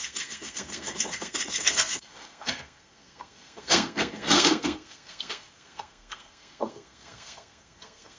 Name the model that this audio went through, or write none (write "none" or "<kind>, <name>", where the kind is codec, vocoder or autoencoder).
codec, SNAC